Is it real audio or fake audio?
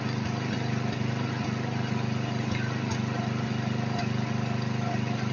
real